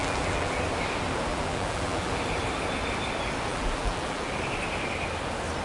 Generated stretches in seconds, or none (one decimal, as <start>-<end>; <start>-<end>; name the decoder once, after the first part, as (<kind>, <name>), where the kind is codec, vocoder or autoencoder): 0.0-0.6 (vocoder, BigVGAN v2); 1.3-2.2; 3.5-4.3